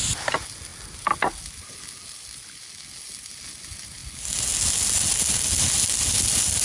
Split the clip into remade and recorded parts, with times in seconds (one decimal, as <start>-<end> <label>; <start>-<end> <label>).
0.0-6.6 recorded

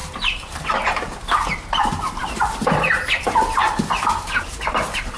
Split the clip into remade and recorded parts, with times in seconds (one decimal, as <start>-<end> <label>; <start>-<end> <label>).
0.0-3.6 remade; 3.6-4.7 recorded; 4.7-5.2 remade

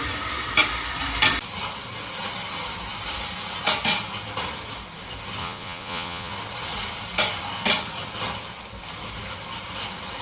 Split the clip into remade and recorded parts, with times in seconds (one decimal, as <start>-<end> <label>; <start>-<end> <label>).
0.0-5.4 recorded; 5.4-6.3 remade; 6.3-10.2 recorded

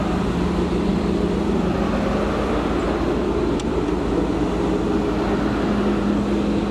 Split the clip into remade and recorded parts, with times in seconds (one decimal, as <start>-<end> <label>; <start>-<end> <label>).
0.0-6.7 recorded

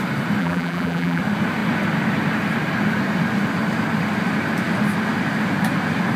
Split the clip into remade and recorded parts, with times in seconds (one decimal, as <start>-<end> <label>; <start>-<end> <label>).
0.0-0.4 recorded; 0.4-1.2 remade; 1.2-6.2 recorded

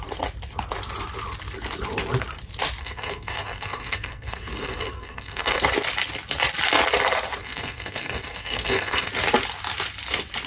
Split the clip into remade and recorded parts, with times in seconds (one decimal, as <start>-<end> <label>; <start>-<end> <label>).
0.0-2.8 recorded; 2.8-5.6 remade; 5.6-7.4 recorded; 7.4-9.1 remade; 9.1-10.5 recorded